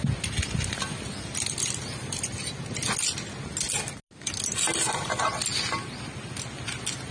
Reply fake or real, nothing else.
real